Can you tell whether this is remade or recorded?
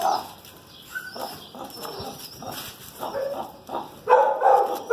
recorded